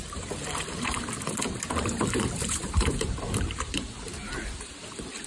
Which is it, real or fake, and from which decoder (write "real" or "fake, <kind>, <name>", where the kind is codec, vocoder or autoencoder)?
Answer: fake, vocoder, BigVGAN v2